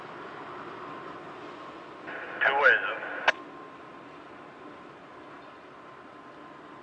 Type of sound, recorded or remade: recorded